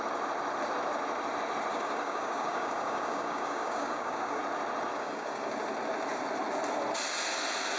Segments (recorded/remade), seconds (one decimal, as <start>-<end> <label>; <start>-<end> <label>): 0.0-1.7 recorded; 1.7-4.4 remade; 4.4-4.9 recorded; 4.9-5.5 remade; 5.5-7.8 recorded